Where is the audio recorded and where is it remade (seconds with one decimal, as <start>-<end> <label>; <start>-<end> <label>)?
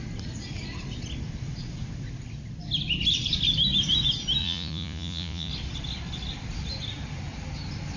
0.0-4.4 recorded; 4.4-5.5 remade; 5.5-8.0 recorded